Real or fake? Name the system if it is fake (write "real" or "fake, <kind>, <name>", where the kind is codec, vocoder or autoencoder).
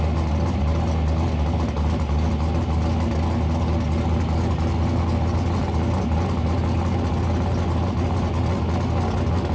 real